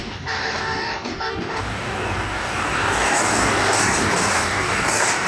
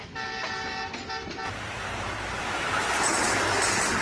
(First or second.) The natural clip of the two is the second